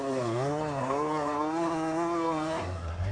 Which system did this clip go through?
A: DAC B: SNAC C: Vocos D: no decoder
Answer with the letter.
B